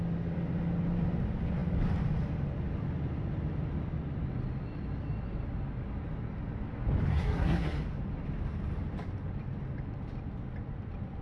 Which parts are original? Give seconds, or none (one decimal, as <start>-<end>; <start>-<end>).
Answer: 0.0-7.1; 7.8-11.2